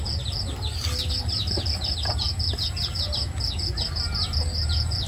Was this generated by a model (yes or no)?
no